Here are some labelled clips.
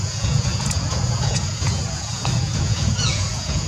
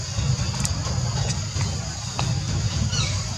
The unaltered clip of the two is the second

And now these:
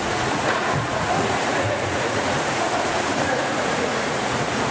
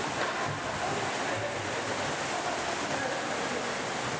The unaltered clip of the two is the second